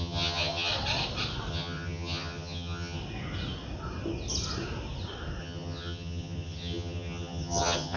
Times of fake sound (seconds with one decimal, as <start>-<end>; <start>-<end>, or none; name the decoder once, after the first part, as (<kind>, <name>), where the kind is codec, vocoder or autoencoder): 0.0-0.7 (vocoder, HiFi-GAN); 1.5-3.0; 5.4-8.0